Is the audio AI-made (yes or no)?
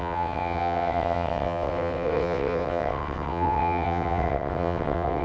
yes